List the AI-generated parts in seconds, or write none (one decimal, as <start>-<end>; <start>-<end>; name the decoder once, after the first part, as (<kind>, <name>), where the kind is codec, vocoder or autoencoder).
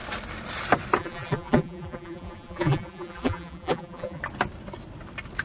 1.0-4.2 (vocoder, BigVGAN v2)